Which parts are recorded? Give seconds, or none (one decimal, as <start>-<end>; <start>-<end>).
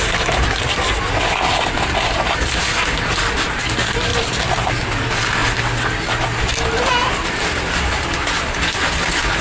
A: 0.0-4.1; 4.7-9.4